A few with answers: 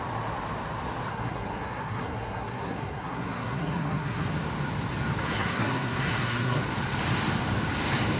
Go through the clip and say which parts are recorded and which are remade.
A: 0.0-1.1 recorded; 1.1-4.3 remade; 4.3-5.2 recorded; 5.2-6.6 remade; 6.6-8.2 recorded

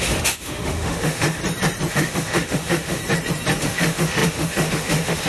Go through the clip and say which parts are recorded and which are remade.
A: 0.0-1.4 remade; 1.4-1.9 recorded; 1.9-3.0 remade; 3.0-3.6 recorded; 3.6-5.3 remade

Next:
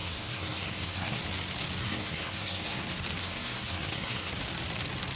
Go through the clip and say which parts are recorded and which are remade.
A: 0.0-1.2 remade; 1.2-1.8 recorded; 1.8-2.8 remade; 2.8-3.2 recorded; 3.2-4.3 remade; 4.3-5.2 recorded